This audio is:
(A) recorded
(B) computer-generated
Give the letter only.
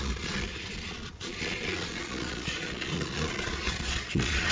B